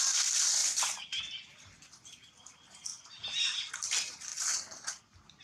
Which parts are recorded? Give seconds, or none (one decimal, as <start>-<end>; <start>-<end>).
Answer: 0.0-2.9; 3.7-5.4